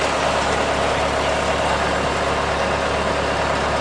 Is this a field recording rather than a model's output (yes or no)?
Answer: yes